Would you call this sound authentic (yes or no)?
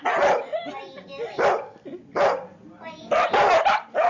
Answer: yes